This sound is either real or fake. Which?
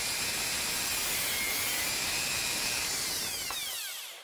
real